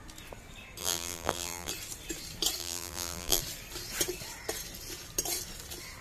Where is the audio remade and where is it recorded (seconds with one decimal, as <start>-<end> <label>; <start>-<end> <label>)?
0.0-0.8 recorded; 0.8-1.7 remade; 1.7-2.6 recorded; 2.6-3.4 remade; 3.4-6.0 recorded